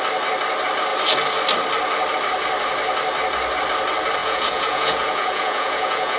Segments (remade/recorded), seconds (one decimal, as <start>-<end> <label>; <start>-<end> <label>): 0.0-4.2 recorded; 4.2-6.2 remade